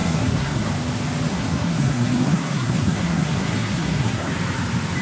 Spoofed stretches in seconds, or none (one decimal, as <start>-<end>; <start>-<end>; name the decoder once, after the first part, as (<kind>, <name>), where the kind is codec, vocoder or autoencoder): 0.0-0.7 (codec, SNAC); 1.3-4.3